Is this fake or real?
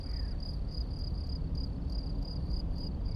real